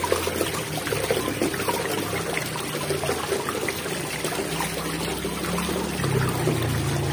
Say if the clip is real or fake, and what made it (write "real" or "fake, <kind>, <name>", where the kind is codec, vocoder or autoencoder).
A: real